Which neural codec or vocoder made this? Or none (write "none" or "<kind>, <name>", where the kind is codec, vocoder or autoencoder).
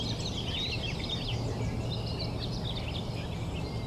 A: none